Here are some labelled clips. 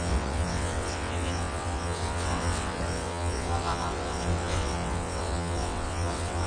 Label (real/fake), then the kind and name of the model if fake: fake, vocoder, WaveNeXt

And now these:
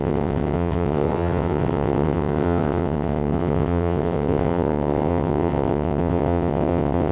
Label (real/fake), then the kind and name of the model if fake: fake, vocoder, WaveNeXt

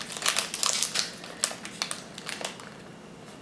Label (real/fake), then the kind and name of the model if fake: real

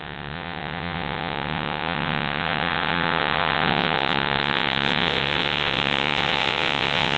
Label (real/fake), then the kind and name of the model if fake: fake, vocoder, WaveNeXt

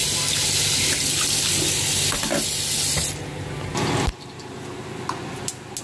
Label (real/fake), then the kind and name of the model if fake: real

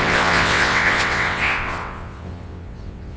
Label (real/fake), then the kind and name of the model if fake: fake, vocoder, WaveNeXt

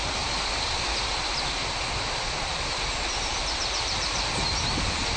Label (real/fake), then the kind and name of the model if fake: real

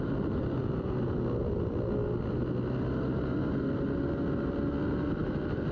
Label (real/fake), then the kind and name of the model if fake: real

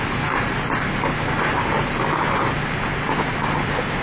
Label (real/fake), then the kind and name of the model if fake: real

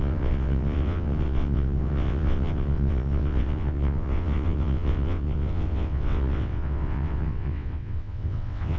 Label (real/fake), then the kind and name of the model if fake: fake, vocoder, WaveNeXt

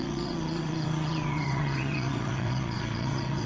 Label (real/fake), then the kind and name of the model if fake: fake, vocoder, WaveNeXt